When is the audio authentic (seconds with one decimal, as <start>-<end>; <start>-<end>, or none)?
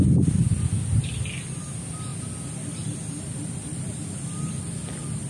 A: 0.0-5.3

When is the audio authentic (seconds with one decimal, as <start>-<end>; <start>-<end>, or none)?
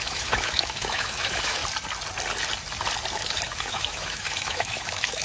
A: 1.6-3.1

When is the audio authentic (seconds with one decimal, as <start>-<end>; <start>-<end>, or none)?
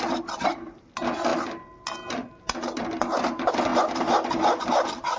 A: 0.0-5.2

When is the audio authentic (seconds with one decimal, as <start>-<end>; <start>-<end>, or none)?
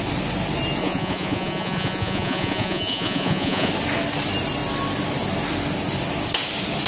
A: 0.0-0.8; 3.7-6.9